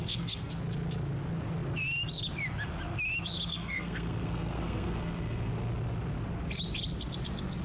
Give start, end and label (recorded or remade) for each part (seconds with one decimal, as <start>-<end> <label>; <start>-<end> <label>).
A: 0.0-0.5 remade; 0.5-3.5 recorded; 3.5-5.5 remade; 5.5-7.6 recorded